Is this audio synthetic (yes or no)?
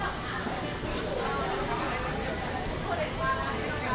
no